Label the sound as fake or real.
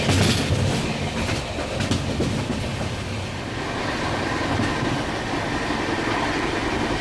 real